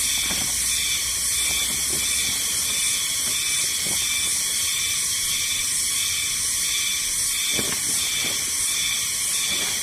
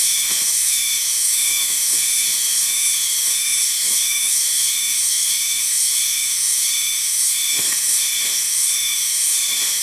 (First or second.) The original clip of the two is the first